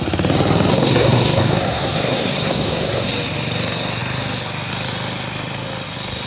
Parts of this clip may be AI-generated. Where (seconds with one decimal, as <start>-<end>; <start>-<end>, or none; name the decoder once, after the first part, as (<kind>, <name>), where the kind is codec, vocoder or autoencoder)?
0.7-3.1 (codec, SNAC)